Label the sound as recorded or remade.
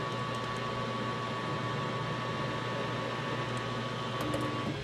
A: recorded